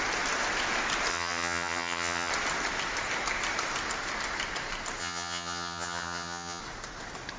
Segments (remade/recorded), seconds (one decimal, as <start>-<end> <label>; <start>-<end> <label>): 0.0-1.1 recorded; 1.1-2.3 remade; 2.3-5.0 recorded; 5.0-6.6 remade; 6.6-7.4 recorded